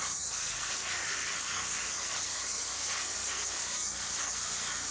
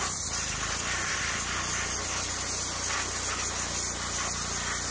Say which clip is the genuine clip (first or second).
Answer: second